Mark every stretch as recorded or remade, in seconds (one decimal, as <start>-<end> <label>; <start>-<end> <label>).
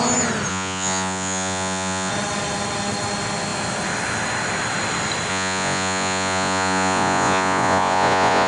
0.0-0.5 recorded; 0.5-2.1 remade; 2.1-5.3 recorded; 5.3-8.5 remade